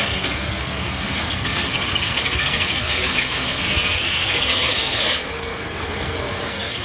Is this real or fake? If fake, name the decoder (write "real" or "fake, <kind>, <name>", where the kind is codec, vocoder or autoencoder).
fake, codec, SNAC